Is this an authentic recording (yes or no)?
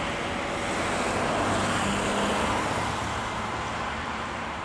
yes